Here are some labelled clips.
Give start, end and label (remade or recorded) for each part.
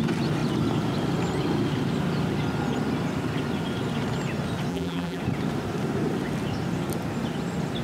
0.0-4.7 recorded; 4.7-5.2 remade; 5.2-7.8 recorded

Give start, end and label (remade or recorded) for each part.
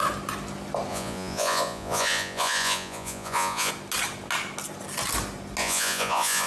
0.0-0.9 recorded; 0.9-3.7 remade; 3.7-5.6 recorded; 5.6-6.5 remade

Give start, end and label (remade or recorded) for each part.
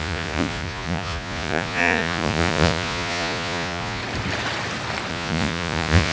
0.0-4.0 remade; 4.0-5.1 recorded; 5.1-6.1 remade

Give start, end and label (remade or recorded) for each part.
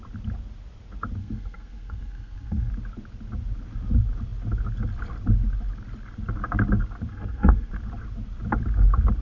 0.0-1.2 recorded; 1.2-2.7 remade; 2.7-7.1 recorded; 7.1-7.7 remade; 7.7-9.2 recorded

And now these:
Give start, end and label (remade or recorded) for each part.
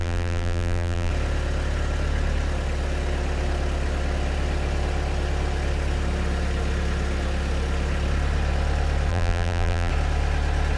0.0-1.1 remade; 1.1-9.1 recorded; 9.1-9.9 remade; 9.9-10.8 recorded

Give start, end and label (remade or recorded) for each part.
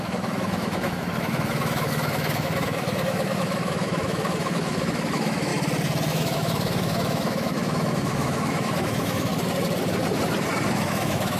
0.0-5.5 remade; 5.5-6.1 recorded; 6.1-9.3 remade; 9.3-10.7 recorded; 10.7-11.4 remade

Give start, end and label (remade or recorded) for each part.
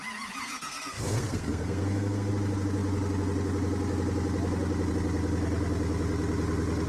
0.0-0.4 recorded; 0.4-2.3 remade; 2.3-6.9 recorded